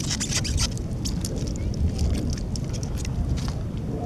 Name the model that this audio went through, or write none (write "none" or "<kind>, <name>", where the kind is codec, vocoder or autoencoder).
none